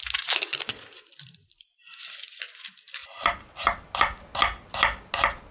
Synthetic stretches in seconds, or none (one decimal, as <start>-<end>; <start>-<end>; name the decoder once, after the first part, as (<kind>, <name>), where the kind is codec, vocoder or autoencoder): 0.5-1.8 (vocoder, BigVGAN v2); 3.0-3.6